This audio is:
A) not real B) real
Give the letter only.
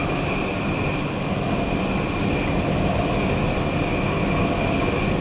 B